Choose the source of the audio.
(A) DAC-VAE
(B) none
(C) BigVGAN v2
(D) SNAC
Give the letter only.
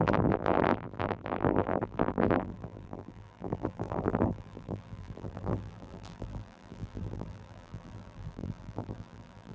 C